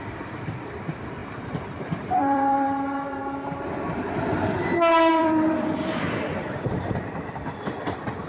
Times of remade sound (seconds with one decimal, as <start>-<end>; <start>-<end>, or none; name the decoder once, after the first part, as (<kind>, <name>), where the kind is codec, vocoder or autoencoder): 0.0-1.2 (vocoder, BigVGAN v2); 1.8-3.2; 5.1-8.3